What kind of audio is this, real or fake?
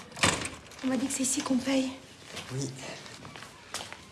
real